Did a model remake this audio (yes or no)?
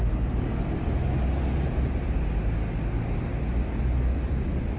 no